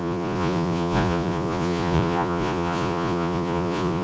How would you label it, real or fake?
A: fake